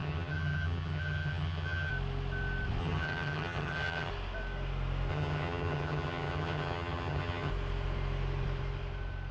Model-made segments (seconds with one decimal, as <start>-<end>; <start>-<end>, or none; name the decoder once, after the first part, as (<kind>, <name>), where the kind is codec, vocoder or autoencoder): 0.0-1.9 (vocoder, HiFi-GAN); 2.8-4.1; 5.1-7.5